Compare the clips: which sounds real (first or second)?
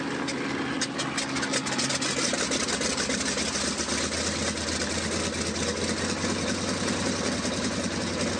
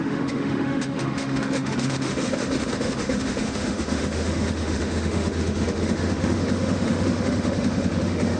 first